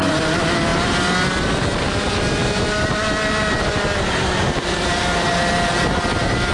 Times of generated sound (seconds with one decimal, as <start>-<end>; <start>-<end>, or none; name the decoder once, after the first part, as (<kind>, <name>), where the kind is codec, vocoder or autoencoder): none

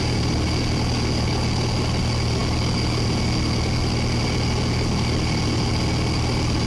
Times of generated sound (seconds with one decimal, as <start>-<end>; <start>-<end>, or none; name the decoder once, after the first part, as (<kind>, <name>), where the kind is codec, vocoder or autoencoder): none

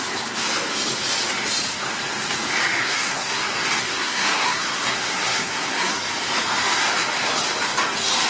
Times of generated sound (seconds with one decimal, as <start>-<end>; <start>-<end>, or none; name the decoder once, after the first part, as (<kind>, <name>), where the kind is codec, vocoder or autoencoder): 2.8-3.4 (codec, SNAC); 3.8-6.0

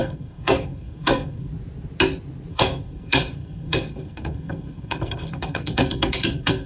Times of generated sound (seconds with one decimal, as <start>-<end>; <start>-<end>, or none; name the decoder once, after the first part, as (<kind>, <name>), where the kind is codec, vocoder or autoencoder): 0.0-1.5 (codec, SNAC); 2.5-6.7

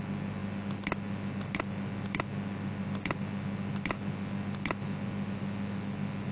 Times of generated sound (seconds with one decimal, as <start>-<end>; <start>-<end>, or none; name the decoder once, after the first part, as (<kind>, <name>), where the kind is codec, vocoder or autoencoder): none

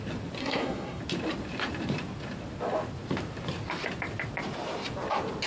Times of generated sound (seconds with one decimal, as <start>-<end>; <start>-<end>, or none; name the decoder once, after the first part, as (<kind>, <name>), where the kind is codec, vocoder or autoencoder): 0.4-1.0 (codec, SNAC)

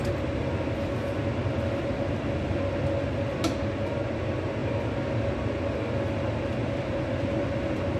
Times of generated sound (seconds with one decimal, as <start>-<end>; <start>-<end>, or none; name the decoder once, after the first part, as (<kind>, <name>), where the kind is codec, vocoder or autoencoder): none

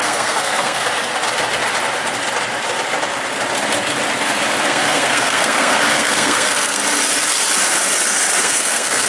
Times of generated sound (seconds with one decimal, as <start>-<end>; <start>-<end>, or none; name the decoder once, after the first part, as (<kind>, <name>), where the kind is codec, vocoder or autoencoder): 0.0-0.8 (codec, SNAC); 4.6-6.8; 8.4-9.1